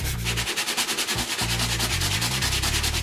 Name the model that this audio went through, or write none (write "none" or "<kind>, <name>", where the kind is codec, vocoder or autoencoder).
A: none